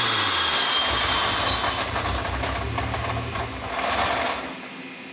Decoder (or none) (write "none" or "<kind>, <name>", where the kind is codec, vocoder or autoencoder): none